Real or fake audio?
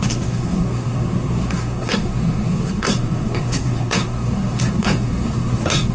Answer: fake